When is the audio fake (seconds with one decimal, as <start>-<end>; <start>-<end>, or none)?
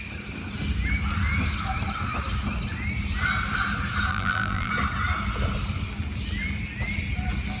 4.1-4.7